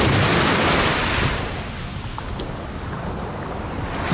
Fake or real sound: real